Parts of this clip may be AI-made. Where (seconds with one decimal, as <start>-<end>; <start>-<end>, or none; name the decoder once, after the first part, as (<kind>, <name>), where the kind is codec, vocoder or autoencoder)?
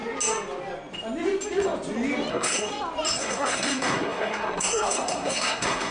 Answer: 2.3-2.7 (codec, SNAC); 3.2-5.9